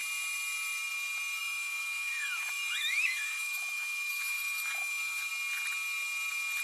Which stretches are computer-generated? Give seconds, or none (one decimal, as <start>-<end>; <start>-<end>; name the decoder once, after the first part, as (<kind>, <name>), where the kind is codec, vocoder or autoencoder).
1.4-5.3 (autoencoder, DAC-VAE)